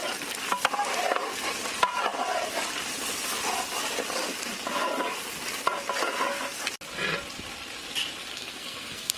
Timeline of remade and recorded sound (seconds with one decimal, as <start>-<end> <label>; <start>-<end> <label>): 0.0-8.3 recorded; 8.3-9.2 remade